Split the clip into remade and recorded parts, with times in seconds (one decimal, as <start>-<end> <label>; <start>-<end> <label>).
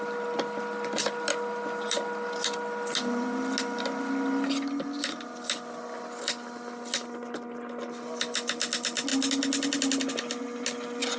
0.0-11.2 recorded